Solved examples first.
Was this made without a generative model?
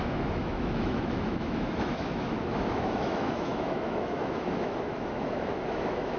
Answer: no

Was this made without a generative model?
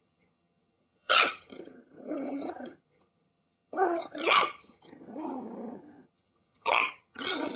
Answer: no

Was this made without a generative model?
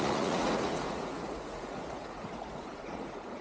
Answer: no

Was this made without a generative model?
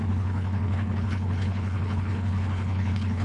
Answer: no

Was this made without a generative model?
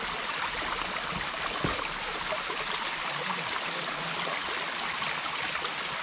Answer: yes